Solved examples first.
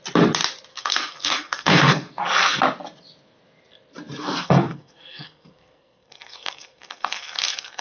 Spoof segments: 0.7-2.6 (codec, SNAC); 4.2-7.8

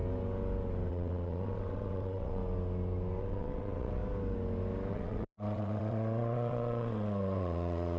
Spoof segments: 0.9-2.4 (vocoder, WaveNeXt); 3.2-4.0; 4.9-8.0

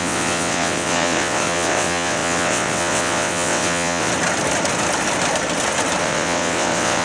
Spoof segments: 0.0-4.1 (vocoder, WaveNeXt); 6.0-7.0